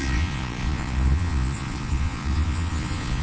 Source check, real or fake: fake